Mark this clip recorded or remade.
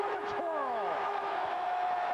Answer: remade